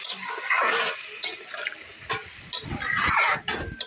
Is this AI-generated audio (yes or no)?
no